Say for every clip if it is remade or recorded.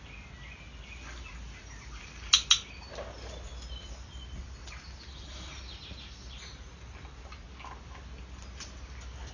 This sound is recorded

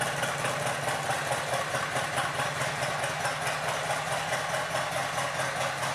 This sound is recorded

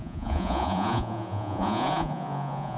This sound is remade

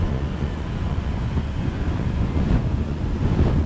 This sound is remade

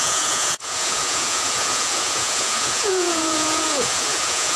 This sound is remade